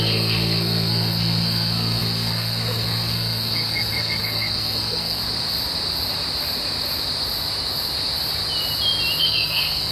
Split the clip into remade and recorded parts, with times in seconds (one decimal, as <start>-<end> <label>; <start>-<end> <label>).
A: 0.0-5.2 remade; 5.2-9.2 recorded; 9.2-9.9 remade